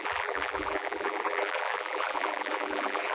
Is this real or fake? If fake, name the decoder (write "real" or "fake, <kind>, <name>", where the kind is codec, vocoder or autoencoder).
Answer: fake, vocoder, BigVGAN v2